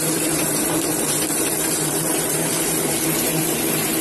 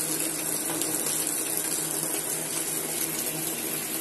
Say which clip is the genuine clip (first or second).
second